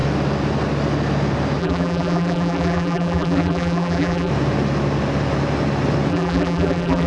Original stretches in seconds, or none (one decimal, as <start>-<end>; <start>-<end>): 0.0-1.6; 4.3-6.1